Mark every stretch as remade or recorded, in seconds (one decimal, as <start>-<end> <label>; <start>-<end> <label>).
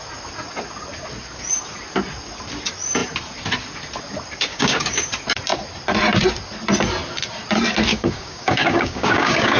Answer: 0.0-4.5 recorded; 4.5-5.1 remade; 5.1-7.9 recorded; 7.9-9.6 remade